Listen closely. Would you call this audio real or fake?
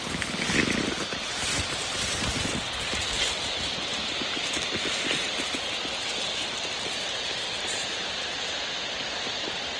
real